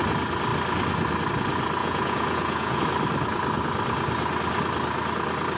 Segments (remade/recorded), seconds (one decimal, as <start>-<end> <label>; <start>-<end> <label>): 0.0-1.8 recorded; 1.8-2.8 remade; 2.8-5.6 recorded